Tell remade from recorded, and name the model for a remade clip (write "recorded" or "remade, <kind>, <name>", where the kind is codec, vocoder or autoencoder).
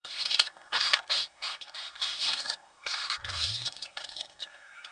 remade, codec, SNAC